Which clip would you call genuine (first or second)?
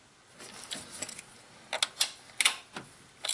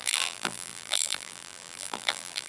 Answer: first